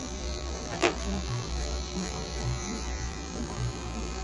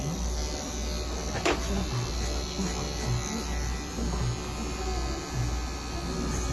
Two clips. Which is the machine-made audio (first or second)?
first